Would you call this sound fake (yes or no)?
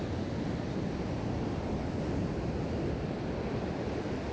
no